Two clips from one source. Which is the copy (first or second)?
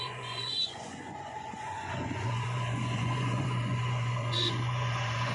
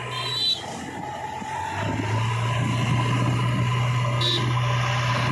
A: first